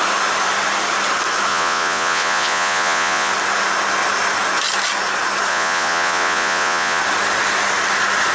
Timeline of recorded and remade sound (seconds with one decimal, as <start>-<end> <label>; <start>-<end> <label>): 0.0-1.5 recorded; 1.5-3.3 remade; 3.3-5.5 recorded; 5.5-7.0 remade; 7.0-8.3 recorded